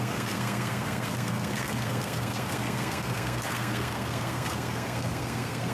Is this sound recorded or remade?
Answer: remade